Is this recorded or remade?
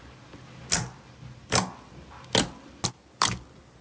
recorded